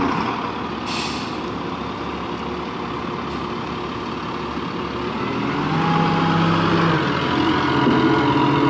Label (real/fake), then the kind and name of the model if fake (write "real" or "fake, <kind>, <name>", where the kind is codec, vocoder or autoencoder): real